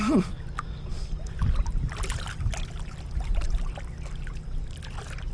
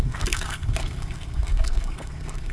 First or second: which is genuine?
first